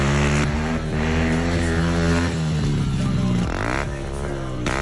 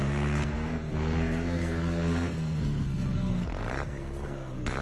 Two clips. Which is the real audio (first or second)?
first